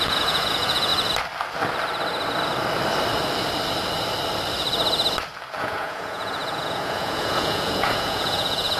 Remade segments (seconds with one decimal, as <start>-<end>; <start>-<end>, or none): 0.0-0.9; 5.6-8.8